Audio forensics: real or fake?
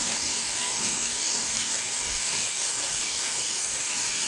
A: fake